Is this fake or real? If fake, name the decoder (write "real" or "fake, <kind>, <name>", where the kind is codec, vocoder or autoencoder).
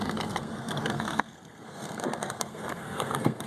fake, codec, SNAC